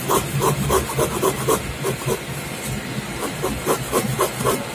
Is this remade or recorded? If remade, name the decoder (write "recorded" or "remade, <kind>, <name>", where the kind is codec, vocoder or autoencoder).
recorded